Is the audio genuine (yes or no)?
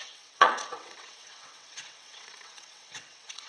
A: no